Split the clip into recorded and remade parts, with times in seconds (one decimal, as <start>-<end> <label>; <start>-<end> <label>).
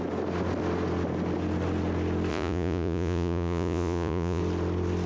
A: 0.0-2.3 recorded; 2.3-4.4 remade; 4.4-5.1 recorded